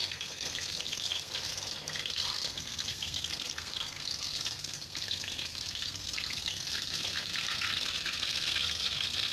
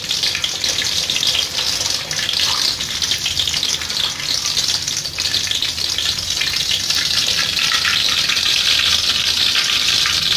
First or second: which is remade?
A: first